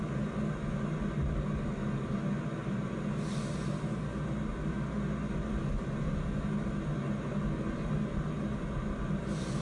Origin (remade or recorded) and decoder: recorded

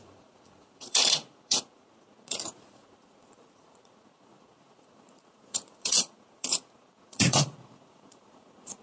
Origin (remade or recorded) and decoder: remade, vocoder, Vocos